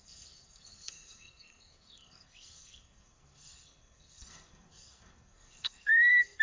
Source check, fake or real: fake